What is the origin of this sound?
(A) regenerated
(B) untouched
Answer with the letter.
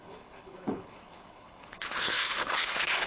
A